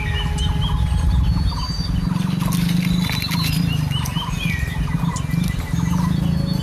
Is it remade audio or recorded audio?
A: recorded